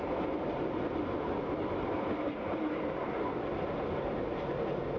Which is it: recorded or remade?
recorded